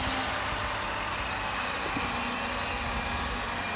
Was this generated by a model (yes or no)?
no